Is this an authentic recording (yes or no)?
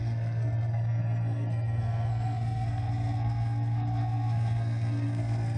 no